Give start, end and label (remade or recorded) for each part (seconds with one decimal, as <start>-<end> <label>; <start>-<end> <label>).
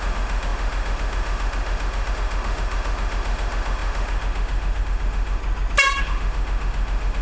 0.0-5.4 remade; 5.4-6.0 recorded; 6.0-7.2 remade